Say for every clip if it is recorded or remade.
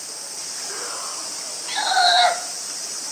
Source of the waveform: recorded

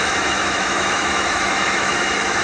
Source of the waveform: remade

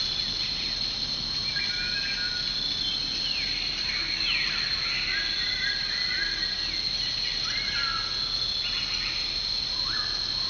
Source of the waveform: recorded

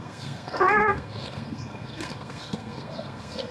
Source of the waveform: remade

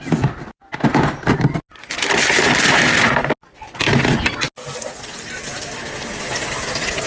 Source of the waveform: recorded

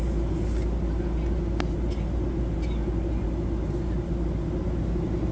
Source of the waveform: recorded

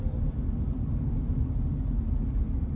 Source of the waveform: recorded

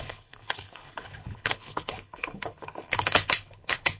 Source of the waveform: remade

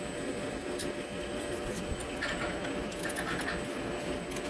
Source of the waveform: recorded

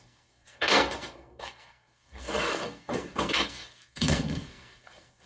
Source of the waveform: remade